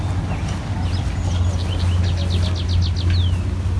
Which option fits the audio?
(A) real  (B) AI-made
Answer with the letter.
A